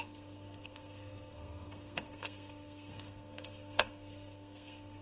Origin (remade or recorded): remade